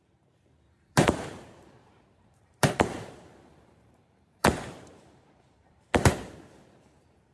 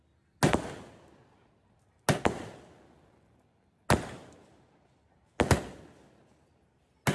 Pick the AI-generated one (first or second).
first